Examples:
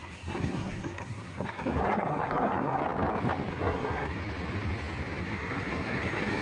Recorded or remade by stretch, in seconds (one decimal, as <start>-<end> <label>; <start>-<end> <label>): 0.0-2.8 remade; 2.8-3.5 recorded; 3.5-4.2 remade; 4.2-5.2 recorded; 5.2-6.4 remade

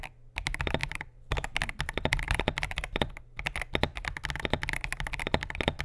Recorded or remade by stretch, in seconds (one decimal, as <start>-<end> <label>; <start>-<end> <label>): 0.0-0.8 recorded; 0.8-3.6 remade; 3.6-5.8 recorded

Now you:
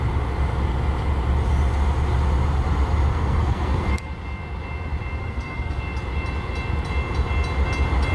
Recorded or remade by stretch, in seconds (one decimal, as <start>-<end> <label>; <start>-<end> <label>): 0.0-3.1 recorded; 3.1-4.1 remade; 4.1-5.2 recorded; 5.2-5.8 remade; 5.8-8.1 recorded